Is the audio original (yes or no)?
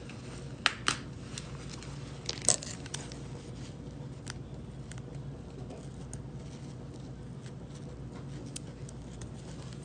yes